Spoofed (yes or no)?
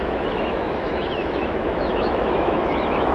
yes